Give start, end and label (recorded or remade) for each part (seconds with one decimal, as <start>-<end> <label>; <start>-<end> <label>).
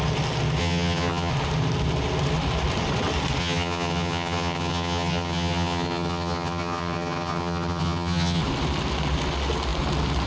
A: 0.0-0.6 recorded; 0.6-1.3 remade; 1.3-3.4 recorded; 3.4-8.4 remade; 8.4-10.3 recorded